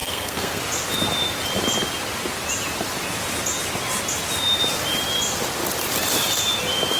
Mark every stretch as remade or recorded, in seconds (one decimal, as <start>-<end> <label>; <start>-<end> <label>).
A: 0.0-0.6 remade; 0.6-7.0 recorded

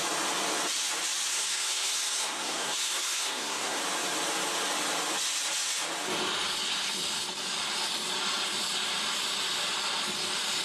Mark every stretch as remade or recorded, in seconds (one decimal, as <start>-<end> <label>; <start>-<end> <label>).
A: 0.0-1.3 recorded; 1.3-3.8 remade; 3.8-10.6 recorded

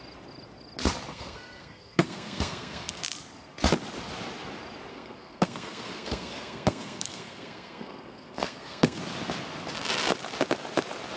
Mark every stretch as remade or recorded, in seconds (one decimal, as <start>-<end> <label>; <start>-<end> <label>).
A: 0.0-1.1 recorded; 1.1-3.0 remade; 3.0-4.9 recorded; 4.9-9.0 remade; 9.0-11.2 recorded